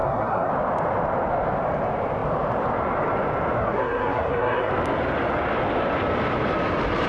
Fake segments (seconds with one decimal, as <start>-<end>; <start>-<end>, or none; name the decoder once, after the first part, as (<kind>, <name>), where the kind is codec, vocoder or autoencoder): 0.0-0.5 (codec, SNAC); 3.6-4.7